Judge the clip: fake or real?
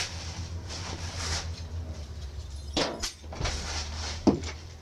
fake